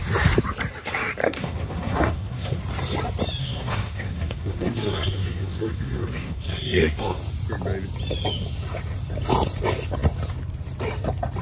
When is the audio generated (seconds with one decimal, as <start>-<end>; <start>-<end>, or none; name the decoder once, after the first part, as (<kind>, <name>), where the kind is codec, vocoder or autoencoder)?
1.2-2.6 (codec, SNAC); 3.4-7.2